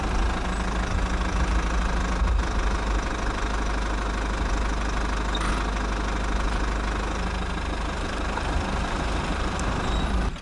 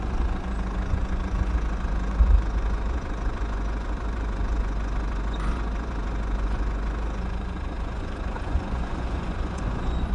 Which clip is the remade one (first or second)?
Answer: second